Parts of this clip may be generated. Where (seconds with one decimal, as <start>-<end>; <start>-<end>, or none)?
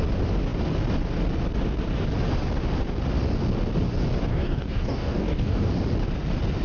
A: 4.3-5.7